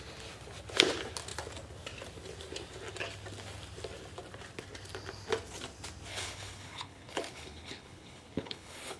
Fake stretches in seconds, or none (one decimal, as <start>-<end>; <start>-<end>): 6.1-9.0